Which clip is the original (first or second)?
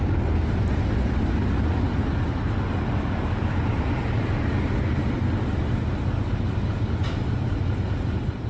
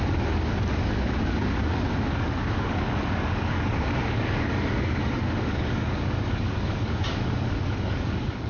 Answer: first